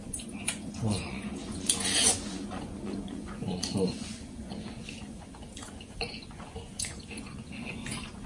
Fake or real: fake